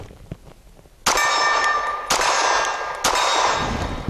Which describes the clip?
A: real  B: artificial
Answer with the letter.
A